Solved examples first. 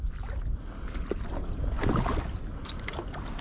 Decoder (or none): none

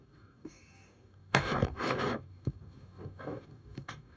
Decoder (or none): codec, DAC